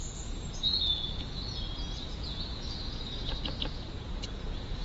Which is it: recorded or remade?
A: remade